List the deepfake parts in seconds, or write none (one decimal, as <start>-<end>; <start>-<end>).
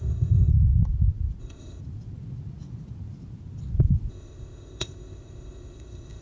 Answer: 0.0-0.5; 1.4-1.8; 4.1-6.2